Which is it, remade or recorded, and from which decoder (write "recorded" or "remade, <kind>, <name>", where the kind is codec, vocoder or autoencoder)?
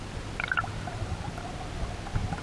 recorded